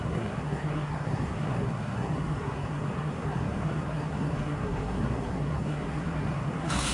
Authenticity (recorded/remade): remade